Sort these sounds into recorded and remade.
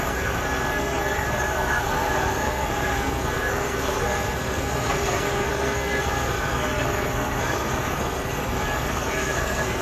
remade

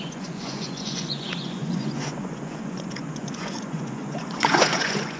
remade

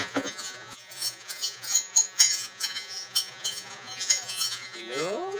remade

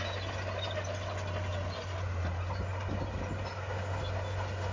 recorded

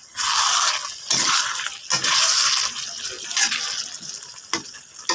recorded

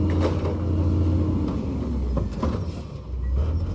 recorded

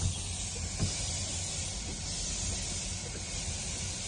recorded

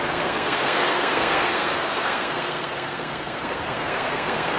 remade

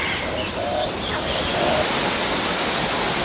recorded